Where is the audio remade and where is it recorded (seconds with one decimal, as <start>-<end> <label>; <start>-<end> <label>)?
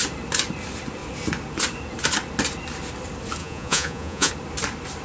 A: 0.0-3.4 recorded; 3.4-4.3 remade; 4.3-5.0 recorded